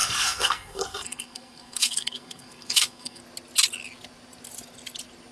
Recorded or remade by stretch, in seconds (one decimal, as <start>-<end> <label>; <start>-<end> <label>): 0.0-3.2 remade; 3.2-5.3 recorded

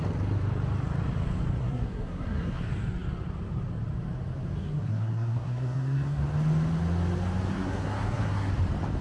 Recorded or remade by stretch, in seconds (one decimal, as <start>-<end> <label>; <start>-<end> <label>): 0.0-1.6 recorded; 1.6-2.6 remade; 2.6-4.6 recorded; 4.6-6.2 remade; 6.2-7.5 recorded; 7.5-8.5 remade; 8.5-9.0 recorded

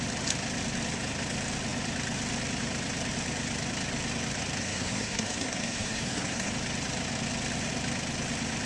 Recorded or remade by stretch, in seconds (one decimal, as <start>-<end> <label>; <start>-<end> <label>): 0.0-4.6 recorded; 4.6-6.5 remade; 6.5-8.7 recorded

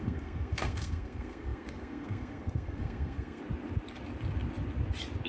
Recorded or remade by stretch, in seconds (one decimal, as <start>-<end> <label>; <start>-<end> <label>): 0.0-3.4 remade; 3.4-5.3 recorded

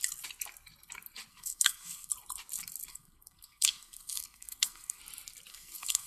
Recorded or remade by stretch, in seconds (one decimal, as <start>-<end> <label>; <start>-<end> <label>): 0.0-1.3 recorded; 1.3-2.1 remade; 2.1-2.9 recorded; 2.9-5.0 remade; 5.0-5.5 recorded; 5.5-6.1 remade